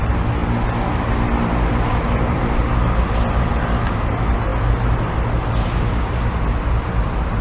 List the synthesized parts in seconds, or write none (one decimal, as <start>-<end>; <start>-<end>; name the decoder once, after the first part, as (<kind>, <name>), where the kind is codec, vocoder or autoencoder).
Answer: none